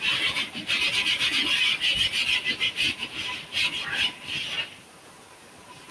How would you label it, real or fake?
fake